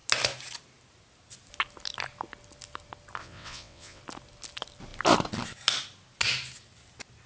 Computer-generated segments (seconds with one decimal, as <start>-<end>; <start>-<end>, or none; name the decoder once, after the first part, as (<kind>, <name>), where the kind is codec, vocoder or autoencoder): 3.2-4.0 (vocoder, WaveNeXt)